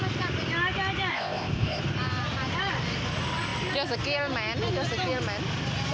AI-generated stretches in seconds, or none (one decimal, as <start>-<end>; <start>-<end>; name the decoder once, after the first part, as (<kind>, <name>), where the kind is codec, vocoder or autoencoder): 1.1-1.8 (codec, ZipCodec)